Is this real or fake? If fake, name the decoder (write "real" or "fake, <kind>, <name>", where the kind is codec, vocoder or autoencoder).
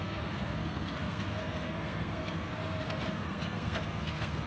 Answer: fake, codec, SNAC